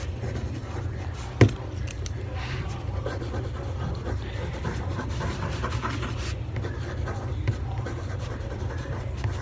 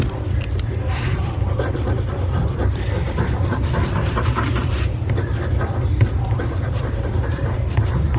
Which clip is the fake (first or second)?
second